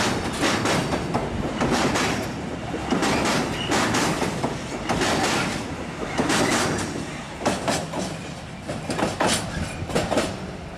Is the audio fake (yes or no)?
no